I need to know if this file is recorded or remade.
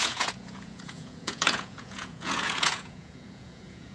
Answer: remade